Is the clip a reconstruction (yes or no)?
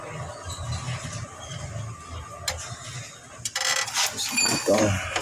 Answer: no